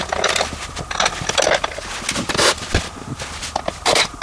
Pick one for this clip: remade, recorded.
recorded